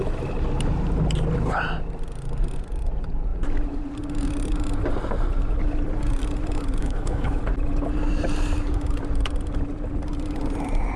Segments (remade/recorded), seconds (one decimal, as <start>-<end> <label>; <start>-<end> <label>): 0.0-6.8 recorded; 6.8-7.4 remade; 7.4-11.0 recorded